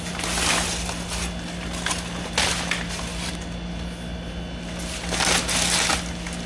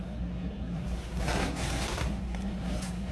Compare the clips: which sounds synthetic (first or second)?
second